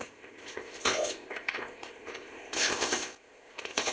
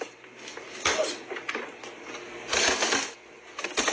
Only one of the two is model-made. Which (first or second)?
first